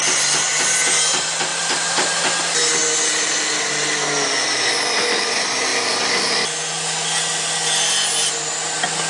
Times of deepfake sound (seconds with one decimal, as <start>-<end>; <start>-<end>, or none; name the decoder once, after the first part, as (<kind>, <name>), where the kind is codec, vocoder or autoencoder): 1.5-2.3 (vocoder, BigVGAN v2)